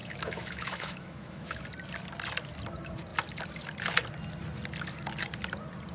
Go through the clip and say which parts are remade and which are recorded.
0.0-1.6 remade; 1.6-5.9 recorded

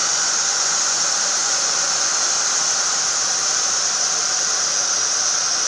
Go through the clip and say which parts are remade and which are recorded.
0.0-1.0 remade; 1.0-1.4 recorded; 1.4-2.1 remade; 2.1-5.7 recorded

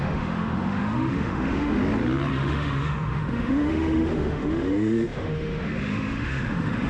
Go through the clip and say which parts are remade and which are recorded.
0.0-1.8 remade; 1.8-2.3 recorded; 2.3-6.9 remade